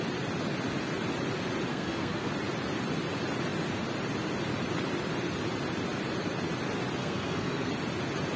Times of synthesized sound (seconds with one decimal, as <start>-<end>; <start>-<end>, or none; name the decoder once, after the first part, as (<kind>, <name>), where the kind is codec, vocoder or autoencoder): 1.7-2.3 (codec, SNAC); 7.0-7.7